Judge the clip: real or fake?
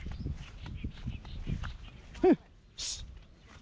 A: real